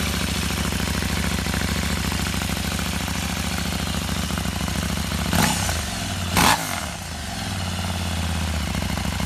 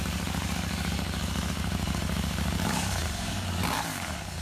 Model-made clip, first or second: second